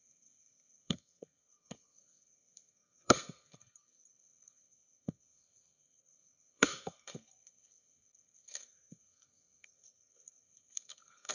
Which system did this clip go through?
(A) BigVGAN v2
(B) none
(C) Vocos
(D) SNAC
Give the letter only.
D